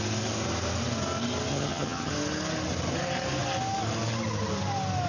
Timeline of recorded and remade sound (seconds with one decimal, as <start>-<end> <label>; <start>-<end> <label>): 0.0-1.5 recorded; 1.5-2.1 remade; 2.1-5.1 recorded